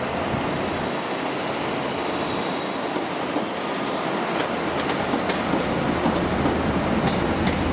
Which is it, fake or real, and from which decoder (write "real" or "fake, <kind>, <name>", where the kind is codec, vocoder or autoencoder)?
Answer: real